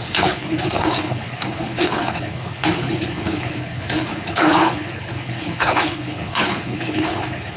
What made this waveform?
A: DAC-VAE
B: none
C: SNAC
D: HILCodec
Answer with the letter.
D